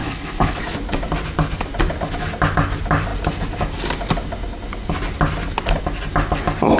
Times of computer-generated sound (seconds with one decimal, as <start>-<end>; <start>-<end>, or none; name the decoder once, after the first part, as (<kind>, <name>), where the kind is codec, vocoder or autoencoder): 0.0-0.6 (codec, HILCodec)